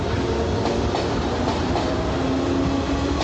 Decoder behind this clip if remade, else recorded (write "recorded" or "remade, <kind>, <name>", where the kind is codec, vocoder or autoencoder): recorded